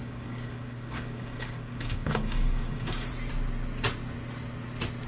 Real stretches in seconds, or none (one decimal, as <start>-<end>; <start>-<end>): 3.1-5.1